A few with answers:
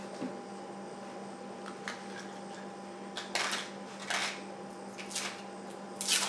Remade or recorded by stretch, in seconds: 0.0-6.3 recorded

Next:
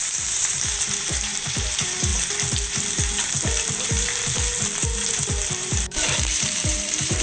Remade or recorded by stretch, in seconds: 0.0-2.1 remade; 2.1-5.5 recorded; 5.5-7.2 remade

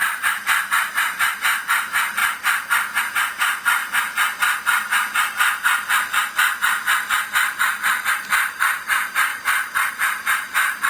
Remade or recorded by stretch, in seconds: 0.0-2.2 remade; 2.2-3.0 recorded; 3.0-3.8 remade; 3.8-8.1 recorded; 8.1-10.9 remade

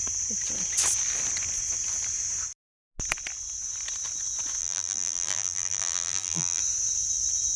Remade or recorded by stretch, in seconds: 0.0-4.6 recorded; 4.6-6.6 remade; 6.6-7.6 recorded

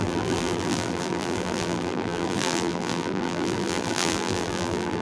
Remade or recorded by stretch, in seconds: 0.0-5.0 remade

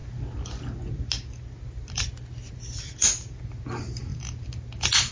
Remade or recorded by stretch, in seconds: 0.0-5.1 recorded

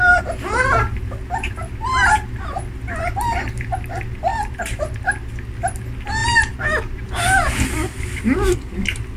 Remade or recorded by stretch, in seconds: 0.0-4.3 recorded; 4.3-4.8 remade; 4.8-9.2 recorded